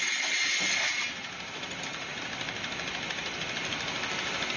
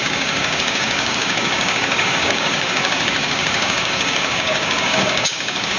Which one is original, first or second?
first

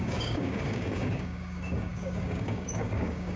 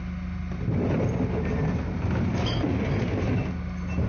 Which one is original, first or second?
second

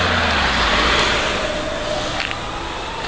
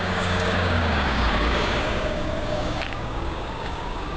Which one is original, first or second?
first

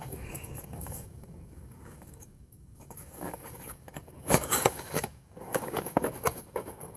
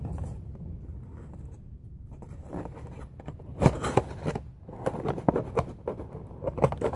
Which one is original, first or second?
second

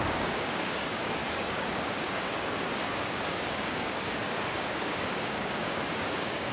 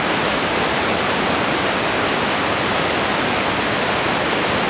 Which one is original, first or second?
second